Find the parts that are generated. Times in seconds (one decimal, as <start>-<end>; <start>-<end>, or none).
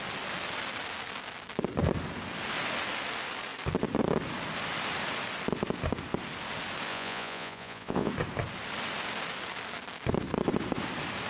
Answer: 6.9-8.1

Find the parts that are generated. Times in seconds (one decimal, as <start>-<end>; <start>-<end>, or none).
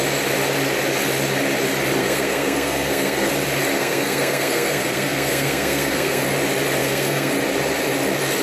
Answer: 2.0-3.3; 3.8-6.2; 6.8-7.3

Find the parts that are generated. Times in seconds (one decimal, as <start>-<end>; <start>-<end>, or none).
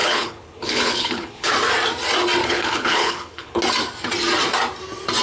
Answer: 0.0-1.5; 2.4-3.6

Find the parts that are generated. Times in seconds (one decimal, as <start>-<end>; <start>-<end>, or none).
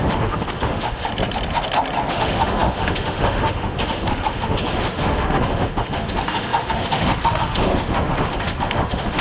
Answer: 0.0-1.1; 2.1-9.2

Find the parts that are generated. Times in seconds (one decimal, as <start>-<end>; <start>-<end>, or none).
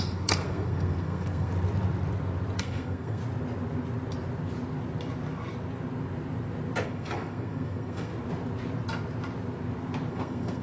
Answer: 0.0-1.5; 2.6-3.2; 6.8-8.1; 10.1-10.6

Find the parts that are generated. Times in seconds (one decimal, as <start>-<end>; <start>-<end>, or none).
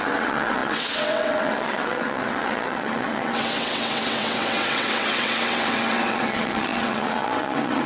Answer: 0.0-7.9